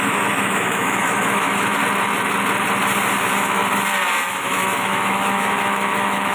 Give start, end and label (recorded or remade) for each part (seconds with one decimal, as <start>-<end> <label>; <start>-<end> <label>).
0.0-1.8 remade; 1.8-3.2 recorded; 3.2-3.6 remade; 3.6-4.3 recorded; 4.3-6.3 remade